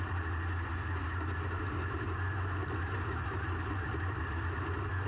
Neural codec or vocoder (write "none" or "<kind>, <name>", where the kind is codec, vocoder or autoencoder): none